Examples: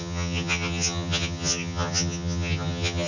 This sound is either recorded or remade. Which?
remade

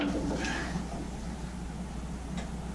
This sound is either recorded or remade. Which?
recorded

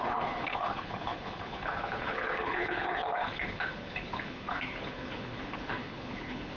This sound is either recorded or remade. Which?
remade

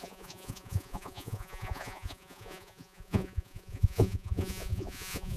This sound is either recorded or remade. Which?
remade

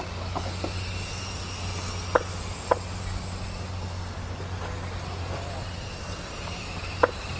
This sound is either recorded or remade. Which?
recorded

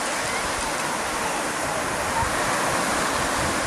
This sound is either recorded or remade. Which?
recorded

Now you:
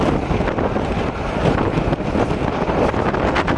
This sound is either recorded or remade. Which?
recorded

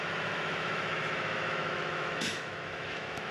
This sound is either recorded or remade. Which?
remade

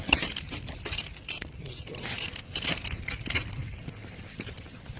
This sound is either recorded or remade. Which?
recorded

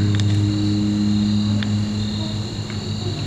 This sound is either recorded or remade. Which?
recorded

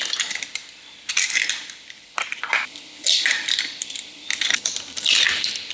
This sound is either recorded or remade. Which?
remade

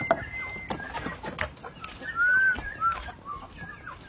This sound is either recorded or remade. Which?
recorded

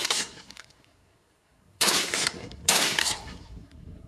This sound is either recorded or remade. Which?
remade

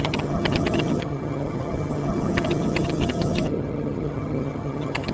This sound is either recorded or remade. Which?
remade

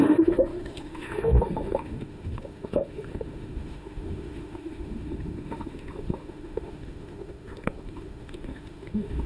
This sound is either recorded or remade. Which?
remade